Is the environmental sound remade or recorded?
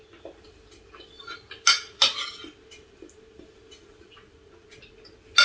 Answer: recorded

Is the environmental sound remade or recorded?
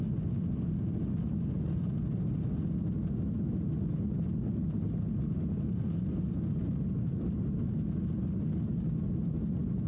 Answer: recorded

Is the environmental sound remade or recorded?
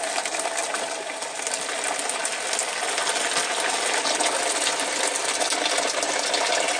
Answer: recorded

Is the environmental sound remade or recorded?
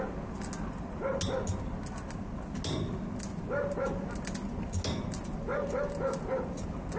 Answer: recorded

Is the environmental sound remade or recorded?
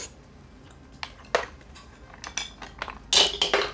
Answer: recorded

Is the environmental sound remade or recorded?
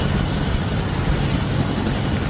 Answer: recorded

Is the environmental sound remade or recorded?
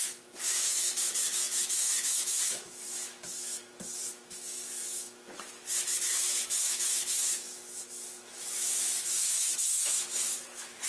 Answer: remade